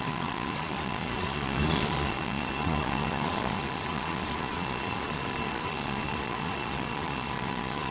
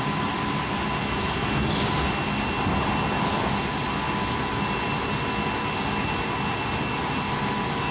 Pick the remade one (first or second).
first